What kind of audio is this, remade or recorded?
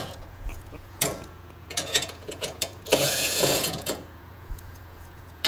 remade